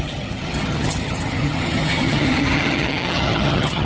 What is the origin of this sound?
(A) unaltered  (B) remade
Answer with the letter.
B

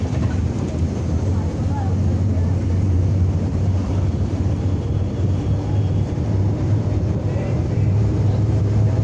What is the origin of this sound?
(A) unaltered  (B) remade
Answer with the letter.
B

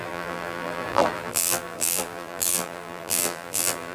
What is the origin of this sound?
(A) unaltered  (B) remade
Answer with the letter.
B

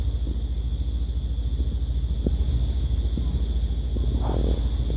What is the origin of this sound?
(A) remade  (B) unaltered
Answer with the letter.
B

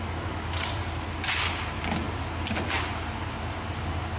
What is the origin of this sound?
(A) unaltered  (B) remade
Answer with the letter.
A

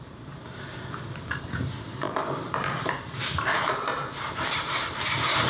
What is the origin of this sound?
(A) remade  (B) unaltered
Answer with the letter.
A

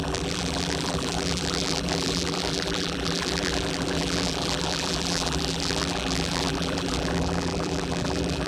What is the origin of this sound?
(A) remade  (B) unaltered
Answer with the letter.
A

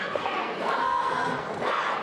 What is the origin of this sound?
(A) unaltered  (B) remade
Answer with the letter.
B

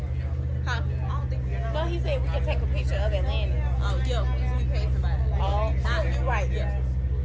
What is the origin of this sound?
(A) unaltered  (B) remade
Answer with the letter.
A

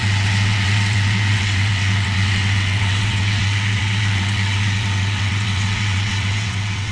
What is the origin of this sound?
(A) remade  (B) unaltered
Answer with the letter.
A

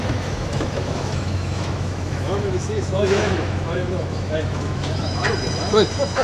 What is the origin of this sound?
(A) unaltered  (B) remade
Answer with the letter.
B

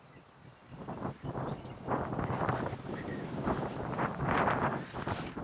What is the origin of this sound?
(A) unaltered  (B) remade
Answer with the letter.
A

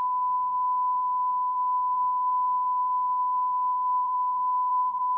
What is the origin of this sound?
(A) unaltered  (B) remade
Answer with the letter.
B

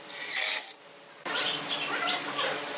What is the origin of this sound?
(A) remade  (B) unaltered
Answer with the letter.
B